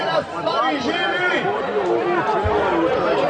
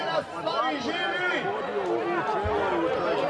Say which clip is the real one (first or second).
second